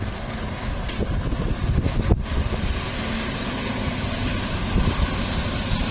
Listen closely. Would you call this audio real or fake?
real